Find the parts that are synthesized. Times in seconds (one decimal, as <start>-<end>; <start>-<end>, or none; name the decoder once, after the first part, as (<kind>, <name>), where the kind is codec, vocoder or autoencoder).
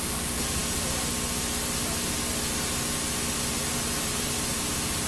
none